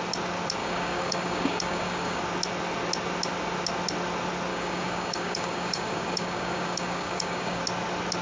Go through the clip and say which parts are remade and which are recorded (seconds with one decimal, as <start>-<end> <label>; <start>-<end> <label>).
0.0-0.6 recorded; 0.6-2.2 remade; 2.2-4.5 recorded; 4.5-7.6 remade; 7.6-8.2 recorded